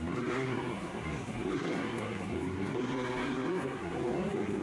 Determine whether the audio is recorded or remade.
remade